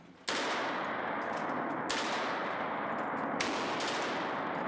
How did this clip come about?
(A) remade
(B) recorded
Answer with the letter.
B